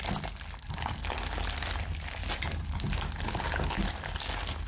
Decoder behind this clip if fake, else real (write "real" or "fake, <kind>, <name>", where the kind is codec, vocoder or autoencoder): real